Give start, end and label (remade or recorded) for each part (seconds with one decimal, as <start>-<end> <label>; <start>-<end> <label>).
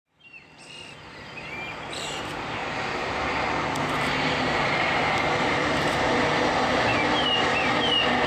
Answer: 0.0-2.6 remade; 2.6-3.8 recorded; 3.8-5.0 remade; 5.0-5.5 recorded; 5.5-6.9 remade; 6.9-8.3 recorded